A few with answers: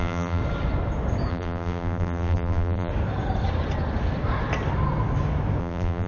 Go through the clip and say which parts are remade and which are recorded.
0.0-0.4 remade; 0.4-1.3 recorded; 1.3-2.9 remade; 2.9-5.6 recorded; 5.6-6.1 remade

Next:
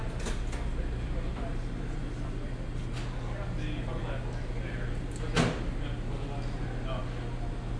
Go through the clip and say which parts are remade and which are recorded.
0.0-7.8 recorded